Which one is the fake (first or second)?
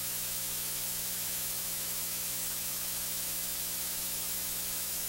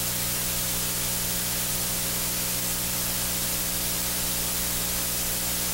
first